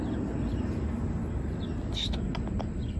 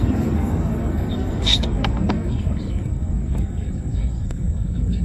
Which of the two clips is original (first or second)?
first